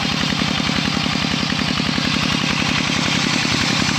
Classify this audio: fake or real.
real